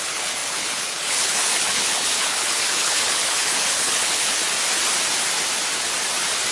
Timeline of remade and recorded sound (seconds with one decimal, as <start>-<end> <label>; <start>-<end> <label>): 0.0-4.4 remade; 4.4-6.5 recorded